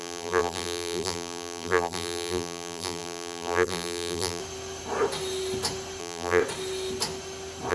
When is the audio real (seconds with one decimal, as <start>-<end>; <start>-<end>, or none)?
4.4-6.0; 6.4-7.7